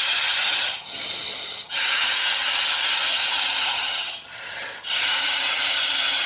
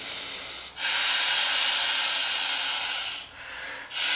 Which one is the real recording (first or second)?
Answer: second